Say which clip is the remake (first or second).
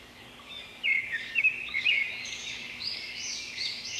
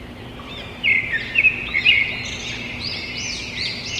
first